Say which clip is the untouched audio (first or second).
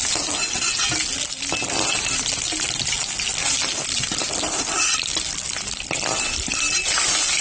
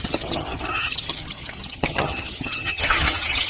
first